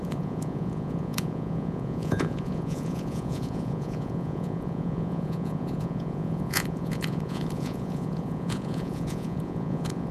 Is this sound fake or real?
fake